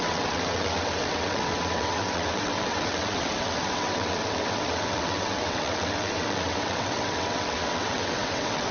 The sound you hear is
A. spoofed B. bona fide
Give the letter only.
A